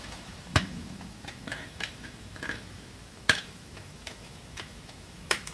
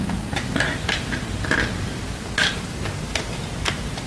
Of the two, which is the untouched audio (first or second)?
second